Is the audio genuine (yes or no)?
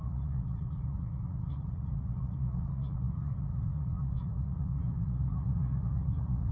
no